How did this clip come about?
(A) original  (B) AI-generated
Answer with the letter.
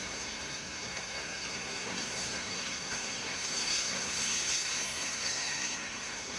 B